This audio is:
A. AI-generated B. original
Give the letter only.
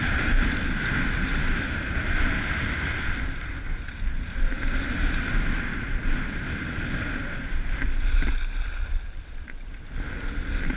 B